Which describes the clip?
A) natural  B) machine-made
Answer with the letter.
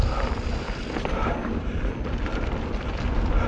A